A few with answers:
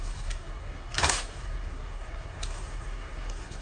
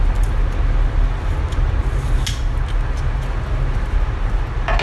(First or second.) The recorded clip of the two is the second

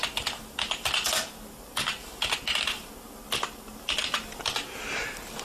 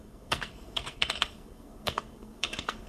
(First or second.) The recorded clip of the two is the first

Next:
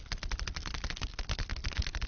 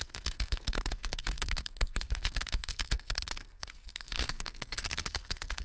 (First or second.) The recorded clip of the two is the first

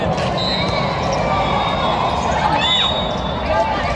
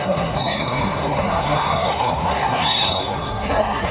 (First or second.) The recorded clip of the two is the first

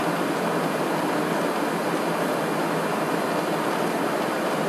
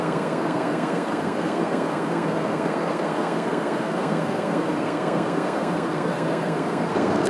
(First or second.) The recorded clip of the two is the first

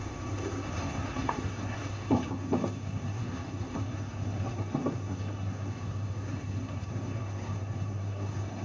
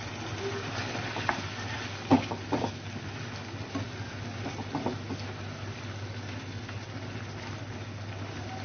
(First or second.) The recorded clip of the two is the second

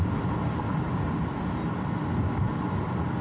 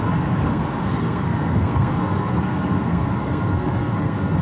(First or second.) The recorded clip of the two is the first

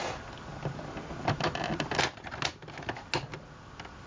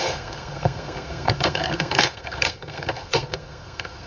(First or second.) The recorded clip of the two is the first